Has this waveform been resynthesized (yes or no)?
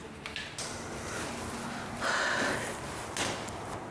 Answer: no